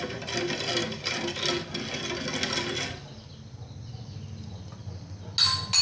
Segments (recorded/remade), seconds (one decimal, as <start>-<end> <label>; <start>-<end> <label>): 0.0-5.8 recorded